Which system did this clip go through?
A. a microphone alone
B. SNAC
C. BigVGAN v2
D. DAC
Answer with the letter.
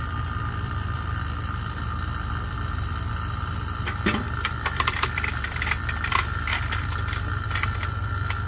C